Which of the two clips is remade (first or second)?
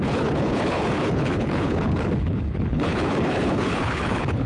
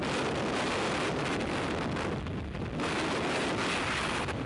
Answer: first